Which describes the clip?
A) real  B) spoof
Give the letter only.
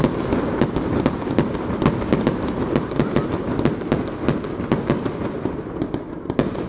A